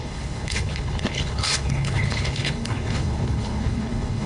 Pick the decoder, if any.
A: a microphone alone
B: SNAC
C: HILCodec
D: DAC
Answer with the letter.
C